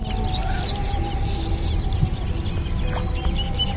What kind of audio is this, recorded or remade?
recorded